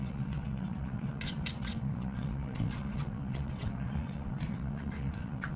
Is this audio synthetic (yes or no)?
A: yes